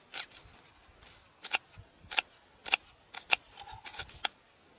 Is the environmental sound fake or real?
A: real